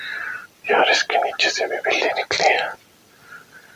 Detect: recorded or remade recorded